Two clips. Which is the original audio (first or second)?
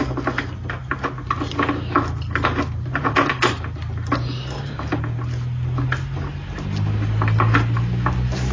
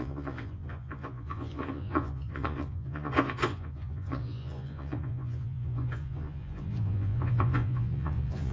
first